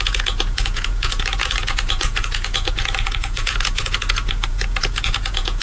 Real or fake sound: fake